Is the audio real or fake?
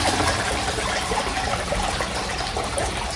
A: fake